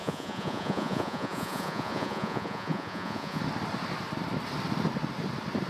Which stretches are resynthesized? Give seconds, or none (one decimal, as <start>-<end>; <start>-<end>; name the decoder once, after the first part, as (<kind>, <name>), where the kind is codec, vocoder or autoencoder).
0.0-3.4 (vocoder, Vocos)